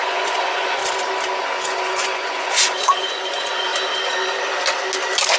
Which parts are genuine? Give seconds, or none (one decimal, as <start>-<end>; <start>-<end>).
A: 0.8-1.4; 3.7-5.4